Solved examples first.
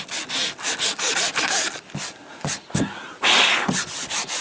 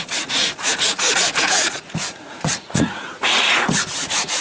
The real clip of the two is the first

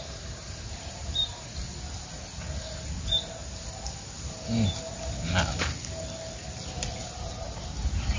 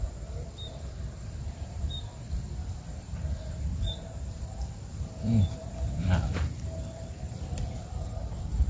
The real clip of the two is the first